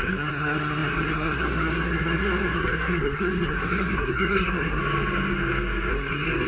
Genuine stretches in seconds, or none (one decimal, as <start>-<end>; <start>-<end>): 4.8-5.9